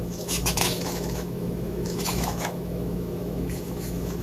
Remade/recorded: remade